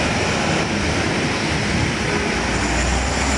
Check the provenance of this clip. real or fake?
real